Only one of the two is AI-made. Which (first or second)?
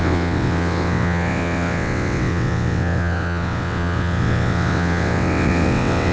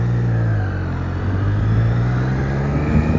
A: first